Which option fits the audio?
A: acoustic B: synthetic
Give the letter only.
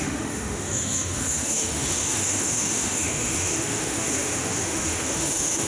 B